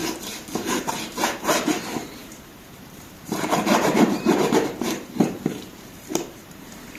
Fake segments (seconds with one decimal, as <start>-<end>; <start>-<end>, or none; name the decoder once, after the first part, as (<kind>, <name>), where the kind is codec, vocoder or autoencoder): 0.0-7.0 (vocoder, BigVGAN v2)